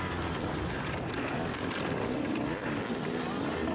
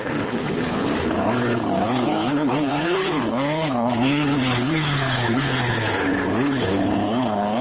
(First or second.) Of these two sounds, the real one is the first